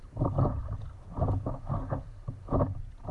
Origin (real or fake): real